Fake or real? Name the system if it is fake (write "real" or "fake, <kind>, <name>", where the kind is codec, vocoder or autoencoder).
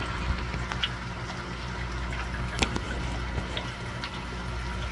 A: real